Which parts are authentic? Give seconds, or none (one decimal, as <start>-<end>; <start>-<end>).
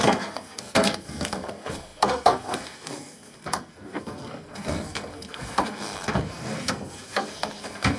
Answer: none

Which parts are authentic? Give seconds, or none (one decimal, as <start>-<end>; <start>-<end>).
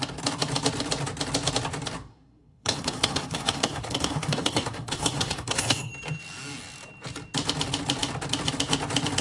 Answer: 0.0-2.1; 5.9-9.2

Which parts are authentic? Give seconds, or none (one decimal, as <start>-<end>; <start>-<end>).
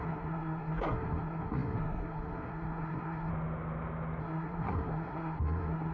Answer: 3.3-4.2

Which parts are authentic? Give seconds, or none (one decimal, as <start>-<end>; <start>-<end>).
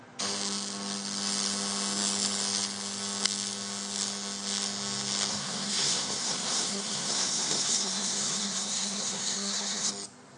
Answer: 0.0-5.3; 9.9-10.4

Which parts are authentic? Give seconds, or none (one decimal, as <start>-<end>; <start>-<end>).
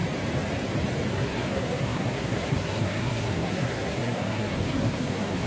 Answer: 0.0-1.1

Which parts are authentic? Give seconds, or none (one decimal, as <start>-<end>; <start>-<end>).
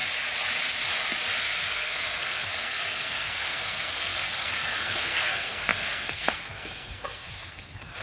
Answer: 0.0-1.4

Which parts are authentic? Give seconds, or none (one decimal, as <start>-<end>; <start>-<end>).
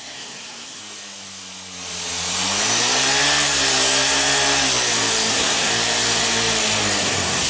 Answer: 0.8-5.3; 5.7-7.0